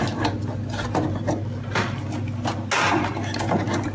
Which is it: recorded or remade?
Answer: recorded